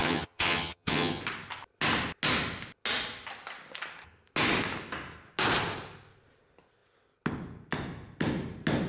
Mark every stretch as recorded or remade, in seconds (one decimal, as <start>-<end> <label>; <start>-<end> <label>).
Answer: 0.0-1.2 remade; 1.2-8.9 recorded